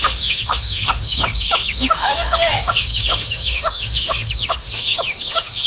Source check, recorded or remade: remade